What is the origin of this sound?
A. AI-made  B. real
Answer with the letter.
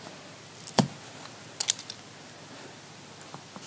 B